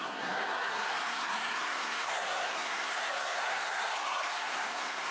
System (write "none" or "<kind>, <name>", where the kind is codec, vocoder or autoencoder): codec, SNAC